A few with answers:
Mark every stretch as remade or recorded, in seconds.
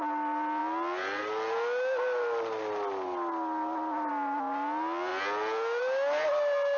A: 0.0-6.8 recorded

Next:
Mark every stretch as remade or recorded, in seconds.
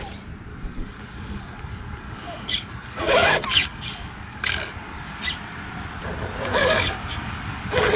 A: 0.0-0.5 recorded; 0.5-5.2 remade; 5.2-6.5 recorded; 6.5-8.0 remade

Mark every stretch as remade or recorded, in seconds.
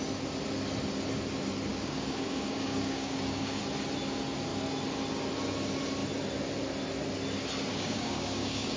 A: 0.0-1.7 recorded; 1.7-3.6 remade; 3.6-7.7 recorded; 7.7-8.8 remade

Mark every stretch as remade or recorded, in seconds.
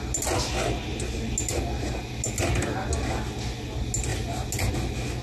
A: 0.0-5.2 recorded